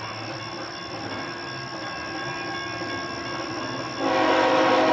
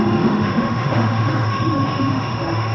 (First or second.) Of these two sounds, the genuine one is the first